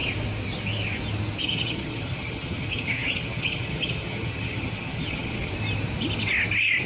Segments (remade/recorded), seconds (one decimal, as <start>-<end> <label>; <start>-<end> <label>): 0.0-1.4 recorded; 1.4-5.5 remade; 5.5-6.9 recorded